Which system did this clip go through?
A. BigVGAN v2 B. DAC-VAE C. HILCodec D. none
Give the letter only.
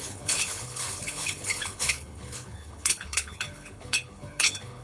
C